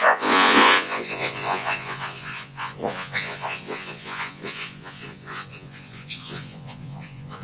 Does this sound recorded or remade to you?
remade